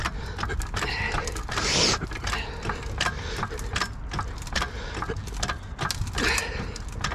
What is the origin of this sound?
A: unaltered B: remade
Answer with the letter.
A